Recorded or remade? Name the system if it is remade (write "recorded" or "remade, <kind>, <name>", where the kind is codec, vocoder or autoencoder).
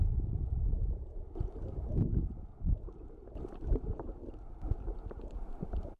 recorded